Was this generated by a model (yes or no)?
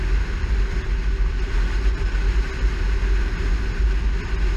no